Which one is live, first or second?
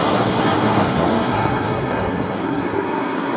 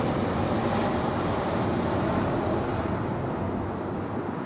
second